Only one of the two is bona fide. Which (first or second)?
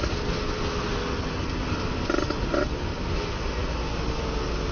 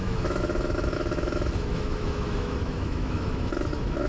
first